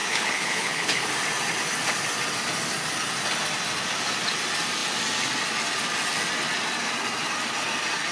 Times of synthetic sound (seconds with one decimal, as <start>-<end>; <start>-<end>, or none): 0.0-1.1